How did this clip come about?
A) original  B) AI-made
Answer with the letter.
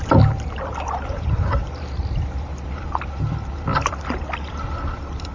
B